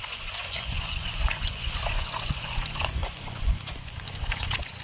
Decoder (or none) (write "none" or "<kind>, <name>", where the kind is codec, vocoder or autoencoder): vocoder, Vocos